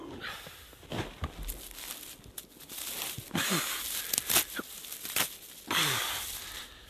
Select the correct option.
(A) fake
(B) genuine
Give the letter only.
B